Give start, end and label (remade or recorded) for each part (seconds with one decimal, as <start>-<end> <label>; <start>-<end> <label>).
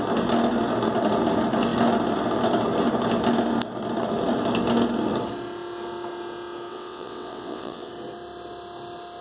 0.0-6.7 recorded; 6.7-7.9 remade; 7.9-9.2 recorded